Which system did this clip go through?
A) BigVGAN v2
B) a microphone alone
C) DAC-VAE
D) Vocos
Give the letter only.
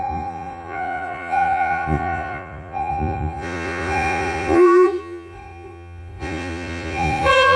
D